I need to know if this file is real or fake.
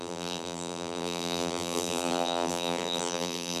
fake